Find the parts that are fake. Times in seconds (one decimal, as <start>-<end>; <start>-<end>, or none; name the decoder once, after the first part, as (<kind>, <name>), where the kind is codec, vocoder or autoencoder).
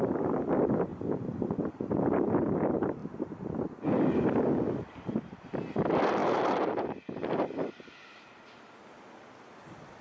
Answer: 0.0-3.0 (vocoder, BigVGAN v2); 4.4-6.2; 7.9-10.0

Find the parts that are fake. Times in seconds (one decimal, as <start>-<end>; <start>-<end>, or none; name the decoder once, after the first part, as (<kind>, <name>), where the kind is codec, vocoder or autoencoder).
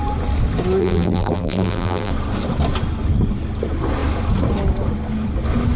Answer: 0.8-2.1 (vocoder, BigVGAN v2)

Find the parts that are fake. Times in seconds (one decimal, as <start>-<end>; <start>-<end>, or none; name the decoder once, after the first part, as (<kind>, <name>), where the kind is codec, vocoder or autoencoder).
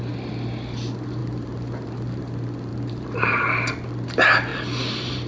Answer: 1.2-2.3 (vocoder, BigVGAN v2); 2.7-3.7; 4.5-5.3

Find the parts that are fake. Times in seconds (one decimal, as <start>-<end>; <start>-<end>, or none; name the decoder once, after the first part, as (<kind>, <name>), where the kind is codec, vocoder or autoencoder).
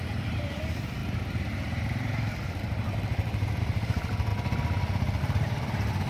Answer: 0.0-4.3 (vocoder, BigVGAN v2); 5.2-6.1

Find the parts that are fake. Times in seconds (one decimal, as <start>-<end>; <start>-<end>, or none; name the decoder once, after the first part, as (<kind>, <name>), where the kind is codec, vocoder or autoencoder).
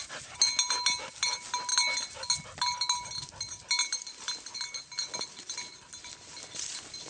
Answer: none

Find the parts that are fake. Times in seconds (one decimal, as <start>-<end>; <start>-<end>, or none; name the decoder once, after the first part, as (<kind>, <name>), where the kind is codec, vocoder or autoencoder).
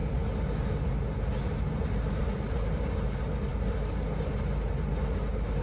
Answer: none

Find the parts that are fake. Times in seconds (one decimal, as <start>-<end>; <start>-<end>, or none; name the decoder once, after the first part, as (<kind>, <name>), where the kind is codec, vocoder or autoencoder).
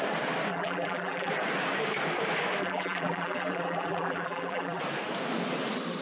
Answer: 0.5-1.3 (vocoder, BigVGAN v2); 2.6-4.8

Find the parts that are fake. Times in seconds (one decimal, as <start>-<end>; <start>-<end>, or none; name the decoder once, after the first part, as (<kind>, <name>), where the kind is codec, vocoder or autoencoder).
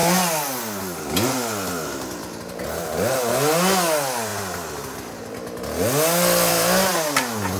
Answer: none